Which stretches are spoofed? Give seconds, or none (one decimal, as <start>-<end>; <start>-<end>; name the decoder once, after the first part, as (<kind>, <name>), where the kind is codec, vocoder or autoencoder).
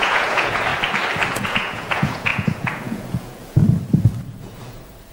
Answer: 0.0-0.7 (vocoder, Vocos); 1.3-3.6; 4.2-5.1